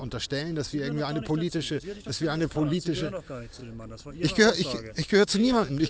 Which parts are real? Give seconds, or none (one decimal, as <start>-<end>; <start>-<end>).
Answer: 0.0-1.5; 3.6-4.9